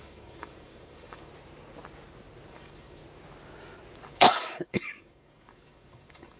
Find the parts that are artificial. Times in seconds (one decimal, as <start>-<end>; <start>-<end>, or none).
0.0-1.3; 2.5-3.0; 4.1-6.4